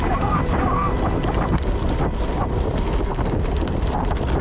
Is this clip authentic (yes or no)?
yes